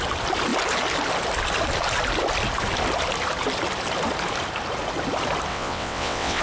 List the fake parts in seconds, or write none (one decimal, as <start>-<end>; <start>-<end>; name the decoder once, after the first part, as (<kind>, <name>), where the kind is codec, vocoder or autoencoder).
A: 5.5-6.4 (vocoder, WaveNeXt)